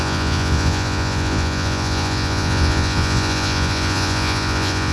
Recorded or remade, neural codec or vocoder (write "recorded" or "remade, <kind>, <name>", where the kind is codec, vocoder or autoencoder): remade, vocoder, Vocos